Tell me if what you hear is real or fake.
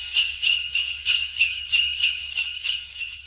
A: fake